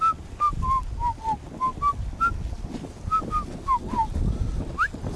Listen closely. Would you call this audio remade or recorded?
recorded